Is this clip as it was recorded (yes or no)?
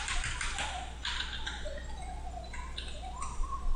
yes